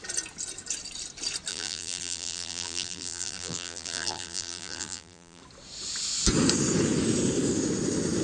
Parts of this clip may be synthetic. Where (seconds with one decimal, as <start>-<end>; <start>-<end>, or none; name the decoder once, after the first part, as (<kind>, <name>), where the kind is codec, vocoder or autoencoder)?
1.5-5.4 (vocoder, BigVGAN v2)